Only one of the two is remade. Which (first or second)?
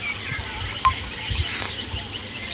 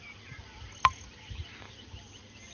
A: first